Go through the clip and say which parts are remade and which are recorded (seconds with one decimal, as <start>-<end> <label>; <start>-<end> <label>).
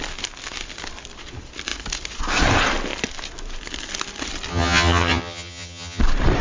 0.0-4.5 recorded; 4.5-6.0 remade; 6.0-6.4 recorded